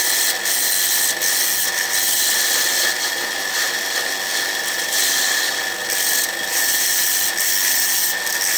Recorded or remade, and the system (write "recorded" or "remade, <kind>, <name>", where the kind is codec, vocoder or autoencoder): recorded